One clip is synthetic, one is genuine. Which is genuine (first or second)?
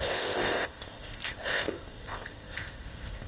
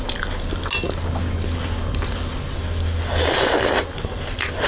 second